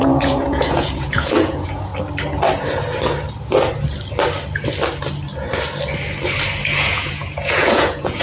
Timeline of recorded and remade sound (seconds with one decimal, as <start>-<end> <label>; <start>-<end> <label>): 0.0-1.9 remade; 1.9-6.8 recorded; 6.8-8.2 remade